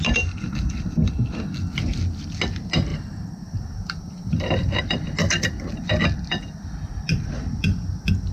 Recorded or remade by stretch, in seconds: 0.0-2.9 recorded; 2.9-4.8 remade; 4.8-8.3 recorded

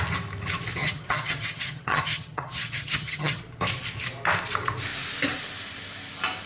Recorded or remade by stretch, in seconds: 0.0-0.8 recorded; 0.8-3.4 remade; 3.4-6.5 recorded

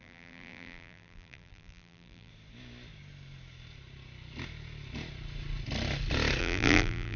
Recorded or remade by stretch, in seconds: 0.0-2.3 remade; 2.3-6.4 recorded; 6.4-7.2 remade

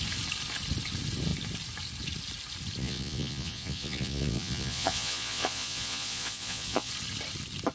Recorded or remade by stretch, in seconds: 0.0-2.8 recorded; 2.8-6.9 remade; 6.9-7.7 recorded

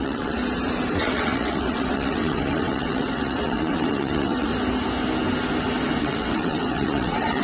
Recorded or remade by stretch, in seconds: 0.0-0.4 remade; 0.4-0.9 recorded; 0.9-4.5 remade; 4.5-6.0 recorded; 6.0-7.4 remade

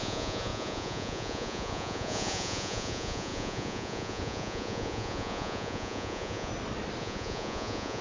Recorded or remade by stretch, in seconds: 0.0-6.5 remade; 6.5-7.0 recorded; 7.0-8.0 remade

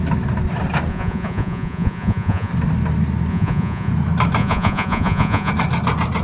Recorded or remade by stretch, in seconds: 0.0-0.9 recorded; 0.9-2.5 remade; 2.5-3.3 recorded; 3.3-3.9 remade; 3.9-4.4 recorded; 4.4-5.5 remade; 5.5-6.2 recorded

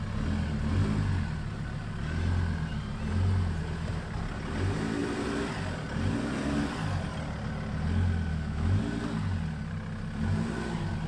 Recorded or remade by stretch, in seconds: 0.0-8.3 recorded; 8.3-8.8 remade; 8.8-11.1 recorded